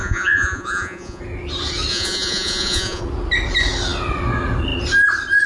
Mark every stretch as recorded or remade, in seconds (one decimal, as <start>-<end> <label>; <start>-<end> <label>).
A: 0.0-1.2 remade; 1.2-1.9 recorded; 1.9-3.0 remade; 3.0-5.5 recorded